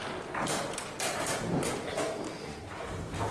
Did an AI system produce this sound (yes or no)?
no